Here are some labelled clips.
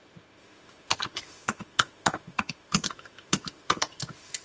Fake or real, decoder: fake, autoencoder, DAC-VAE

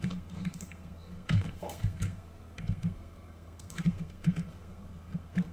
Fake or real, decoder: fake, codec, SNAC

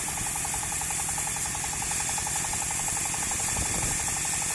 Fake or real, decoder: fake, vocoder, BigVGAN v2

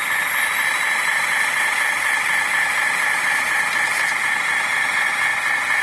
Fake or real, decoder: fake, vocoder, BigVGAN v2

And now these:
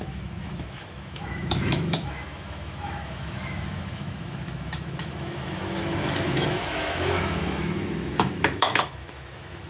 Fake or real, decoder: fake, autoencoder, DAC-VAE